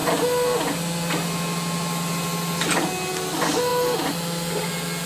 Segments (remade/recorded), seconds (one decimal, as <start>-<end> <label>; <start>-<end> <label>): 0.0-5.1 recorded